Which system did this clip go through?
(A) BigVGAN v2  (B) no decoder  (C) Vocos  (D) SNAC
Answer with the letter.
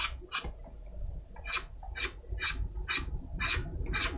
A